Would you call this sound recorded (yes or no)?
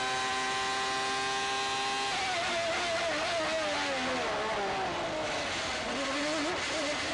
yes